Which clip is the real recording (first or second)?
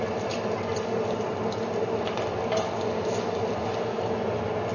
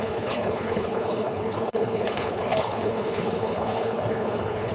first